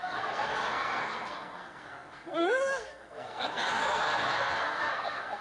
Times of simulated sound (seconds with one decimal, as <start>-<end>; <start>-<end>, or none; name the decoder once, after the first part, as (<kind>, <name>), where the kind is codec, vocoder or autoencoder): 0.0-5.4 (codec, SNAC)

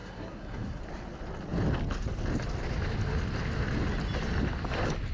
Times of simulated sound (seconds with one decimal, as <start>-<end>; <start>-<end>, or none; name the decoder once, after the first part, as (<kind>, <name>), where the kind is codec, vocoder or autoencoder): 0.0-0.8 (codec, SNAC)

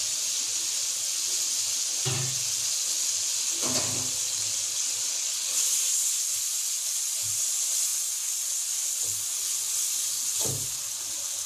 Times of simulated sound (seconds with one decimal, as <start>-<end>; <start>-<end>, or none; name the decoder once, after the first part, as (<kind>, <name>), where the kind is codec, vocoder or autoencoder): none

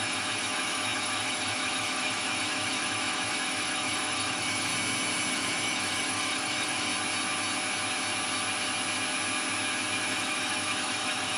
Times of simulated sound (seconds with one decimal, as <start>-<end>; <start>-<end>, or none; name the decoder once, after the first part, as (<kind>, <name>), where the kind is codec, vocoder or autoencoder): 0.0-4.7 (autoencoder, DAC-VAE); 5.3-6.9; 10.0-11.4

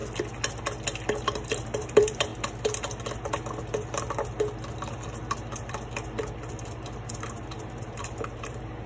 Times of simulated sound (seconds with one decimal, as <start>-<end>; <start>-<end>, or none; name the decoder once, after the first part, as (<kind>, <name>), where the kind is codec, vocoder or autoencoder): 1.2-2.3 (vocoder, BigVGAN v2); 7.1-8.9

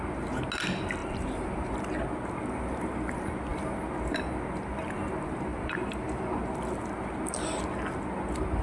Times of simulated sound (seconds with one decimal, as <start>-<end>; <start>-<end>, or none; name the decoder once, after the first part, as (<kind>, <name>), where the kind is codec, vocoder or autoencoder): 1.0-1.7 (vocoder, BigVGAN v2); 5.5-6.4

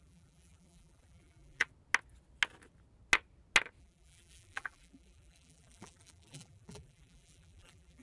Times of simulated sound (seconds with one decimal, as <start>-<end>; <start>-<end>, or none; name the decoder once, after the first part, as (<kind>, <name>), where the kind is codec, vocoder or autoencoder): 0.0-1.7 (vocoder, BigVGAN v2); 3.8-8.0